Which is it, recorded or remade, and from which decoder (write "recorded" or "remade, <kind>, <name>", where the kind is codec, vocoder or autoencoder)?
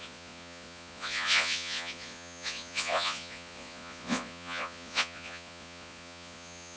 remade, vocoder, Vocos